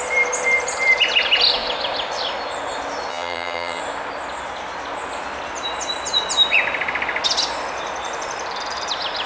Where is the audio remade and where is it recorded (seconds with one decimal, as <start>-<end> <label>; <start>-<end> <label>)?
0.0-3.1 recorded; 3.1-3.8 remade; 3.8-9.3 recorded